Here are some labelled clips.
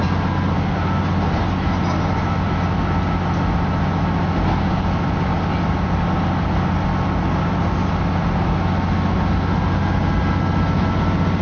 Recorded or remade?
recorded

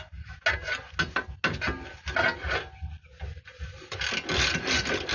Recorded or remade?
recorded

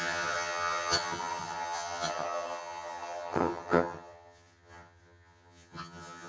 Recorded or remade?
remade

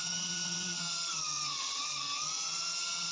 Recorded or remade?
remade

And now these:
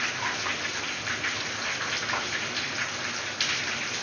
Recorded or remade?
recorded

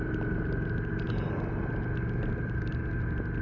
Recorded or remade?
recorded